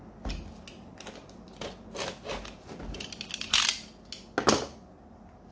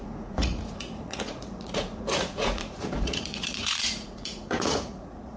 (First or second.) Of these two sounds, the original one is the first